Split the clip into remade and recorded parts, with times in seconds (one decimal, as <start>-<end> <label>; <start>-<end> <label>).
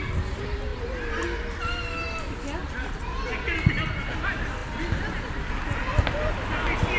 0.0-7.0 recorded